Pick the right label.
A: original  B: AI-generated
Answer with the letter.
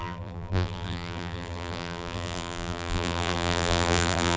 B